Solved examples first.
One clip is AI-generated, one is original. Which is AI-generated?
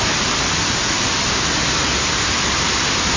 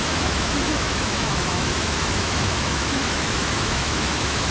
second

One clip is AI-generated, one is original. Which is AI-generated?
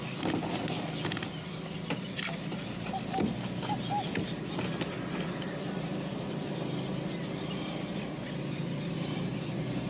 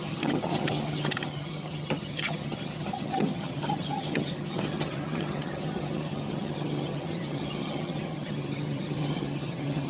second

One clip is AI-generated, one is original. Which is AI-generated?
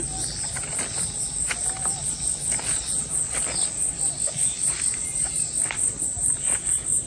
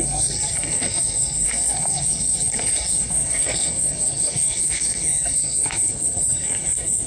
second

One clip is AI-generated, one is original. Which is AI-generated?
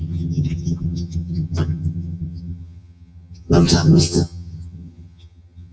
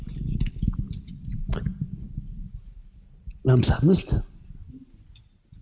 first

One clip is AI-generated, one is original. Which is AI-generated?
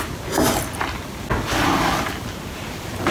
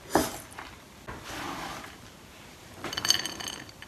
second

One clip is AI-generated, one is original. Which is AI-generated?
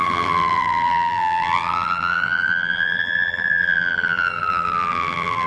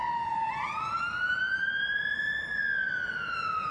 first